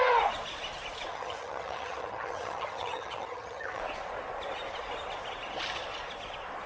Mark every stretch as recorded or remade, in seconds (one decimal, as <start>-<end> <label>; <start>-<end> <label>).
0.0-1.1 recorded; 1.1-3.8 remade; 3.8-6.7 recorded